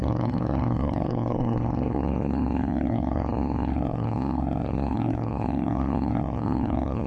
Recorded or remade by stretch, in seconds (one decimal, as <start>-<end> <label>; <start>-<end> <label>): 0.0-7.1 remade